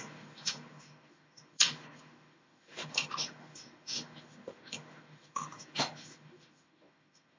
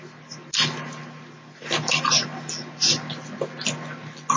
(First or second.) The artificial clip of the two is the first